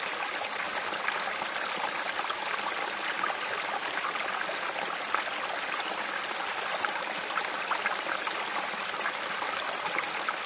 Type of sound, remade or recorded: recorded